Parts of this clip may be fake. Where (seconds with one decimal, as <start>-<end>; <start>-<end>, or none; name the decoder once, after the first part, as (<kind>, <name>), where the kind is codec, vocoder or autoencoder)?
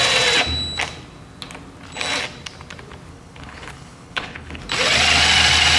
3.1-4.6 (codec, HILCodec)